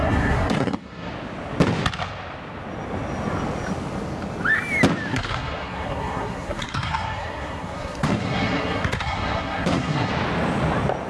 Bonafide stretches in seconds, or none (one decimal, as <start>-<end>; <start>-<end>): 1.1-5.1; 10.1-11.1